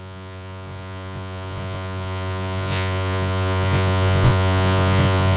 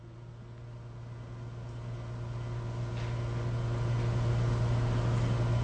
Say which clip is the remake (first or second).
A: first